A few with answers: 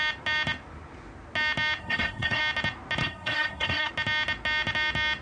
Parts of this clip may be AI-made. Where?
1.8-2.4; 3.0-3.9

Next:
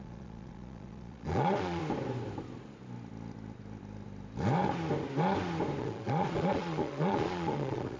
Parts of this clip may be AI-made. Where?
0.0-1.8; 5.8-8.0

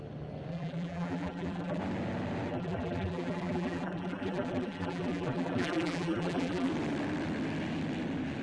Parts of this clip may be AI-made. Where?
0.5-1.8; 2.5-6.7

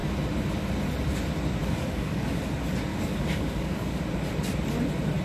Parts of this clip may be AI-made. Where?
1.6-2.4; 2.9-4.0

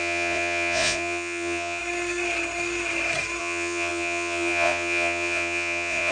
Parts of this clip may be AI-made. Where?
0.0-1.8; 3.4-6.1

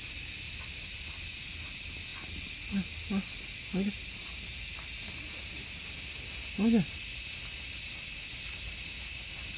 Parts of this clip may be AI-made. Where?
none

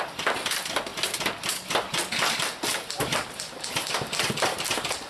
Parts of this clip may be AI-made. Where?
none